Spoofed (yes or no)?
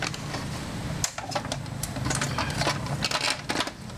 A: yes